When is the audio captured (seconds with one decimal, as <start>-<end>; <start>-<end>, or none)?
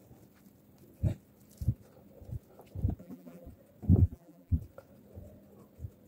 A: 0.0-3.0; 3.5-4.0; 4.6-6.1